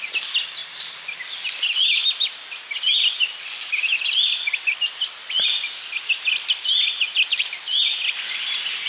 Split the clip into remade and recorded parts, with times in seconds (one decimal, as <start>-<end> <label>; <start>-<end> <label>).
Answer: 0.0-8.9 recorded

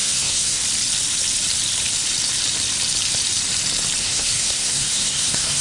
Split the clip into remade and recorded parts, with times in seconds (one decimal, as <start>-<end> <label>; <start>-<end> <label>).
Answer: 0.0-0.6 remade; 0.6-4.0 recorded; 4.0-5.6 remade

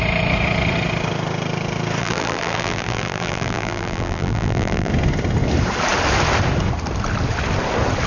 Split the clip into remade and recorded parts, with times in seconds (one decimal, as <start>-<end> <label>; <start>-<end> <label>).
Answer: 0.0-2.0 recorded; 2.0-4.9 remade; 4.9-8.1 recorded

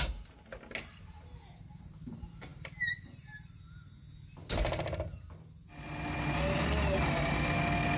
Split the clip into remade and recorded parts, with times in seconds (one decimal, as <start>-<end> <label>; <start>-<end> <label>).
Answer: 0.0-8.0 recorded